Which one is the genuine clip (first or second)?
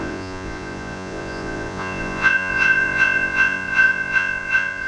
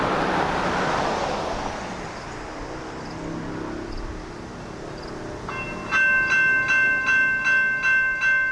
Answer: second